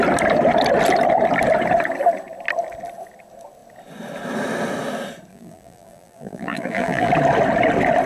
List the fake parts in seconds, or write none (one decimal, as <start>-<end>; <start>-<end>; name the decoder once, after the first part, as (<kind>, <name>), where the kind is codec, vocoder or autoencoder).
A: 5.3-7.1 (vocoder, BigVGAN v2)